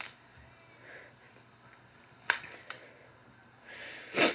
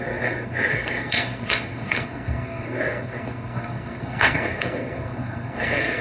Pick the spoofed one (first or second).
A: second